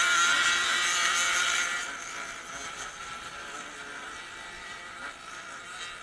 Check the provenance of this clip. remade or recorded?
recorded